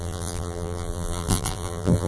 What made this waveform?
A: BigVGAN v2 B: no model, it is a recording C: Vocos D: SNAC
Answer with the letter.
A